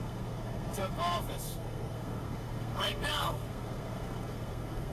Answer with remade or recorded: remade